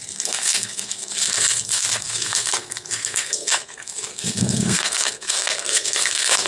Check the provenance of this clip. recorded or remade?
remade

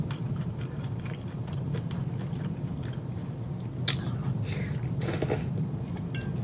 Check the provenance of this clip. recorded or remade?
recorded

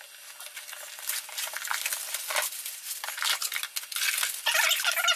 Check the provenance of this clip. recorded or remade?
recorded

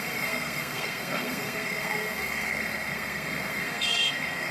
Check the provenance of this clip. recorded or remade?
remade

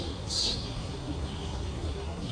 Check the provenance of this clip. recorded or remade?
remade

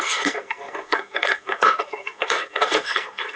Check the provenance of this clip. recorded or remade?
remade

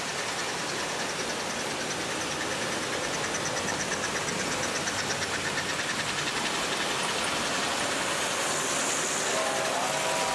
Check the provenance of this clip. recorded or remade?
recorded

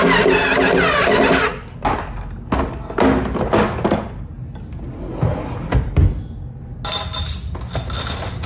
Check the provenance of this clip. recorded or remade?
recorded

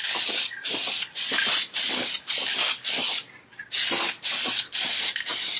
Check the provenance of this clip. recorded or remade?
recorded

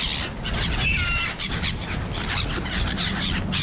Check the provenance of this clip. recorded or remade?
recorded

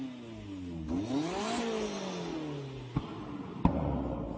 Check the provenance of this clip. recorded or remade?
recorded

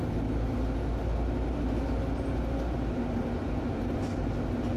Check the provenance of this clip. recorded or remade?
recorded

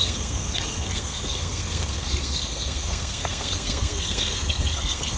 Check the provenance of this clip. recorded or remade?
remade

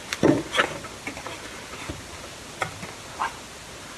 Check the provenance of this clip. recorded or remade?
recorded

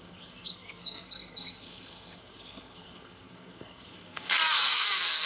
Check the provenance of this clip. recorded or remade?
remade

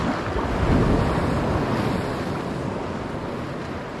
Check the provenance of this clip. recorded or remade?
recorded